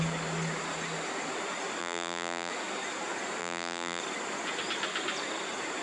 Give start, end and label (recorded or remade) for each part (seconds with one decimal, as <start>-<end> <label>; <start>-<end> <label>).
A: 0.0-1.8 recorded; 1.8-2.5 remade; 2.5-3.4 recorded; 3.4-4.0 remade; 4.0-5.8 recorded